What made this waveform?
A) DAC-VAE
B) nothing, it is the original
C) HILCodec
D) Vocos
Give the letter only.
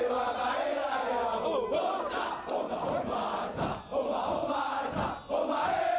B